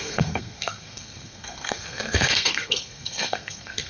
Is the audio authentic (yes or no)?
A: no